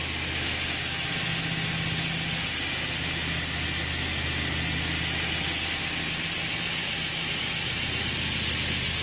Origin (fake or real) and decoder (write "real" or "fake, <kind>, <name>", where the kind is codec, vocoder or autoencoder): real